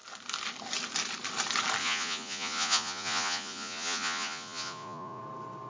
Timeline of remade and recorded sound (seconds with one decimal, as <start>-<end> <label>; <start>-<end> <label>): 0.0-1.8 recorded; 1.8-5.2 remade; 5.2-5.7 recorded